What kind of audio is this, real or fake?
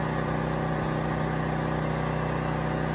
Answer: real